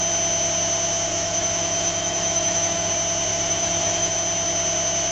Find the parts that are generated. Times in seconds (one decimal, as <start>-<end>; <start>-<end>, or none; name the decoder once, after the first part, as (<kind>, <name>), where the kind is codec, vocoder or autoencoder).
1.1-2.9 (autoencoder, DAC-VAE); 3.3-4.1